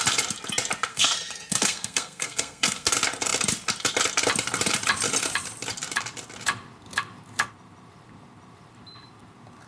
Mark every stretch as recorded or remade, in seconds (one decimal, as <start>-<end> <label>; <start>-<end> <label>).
0.0-0.9 recorded; 0.9-2.9 remade; 2.9-9.7 recorded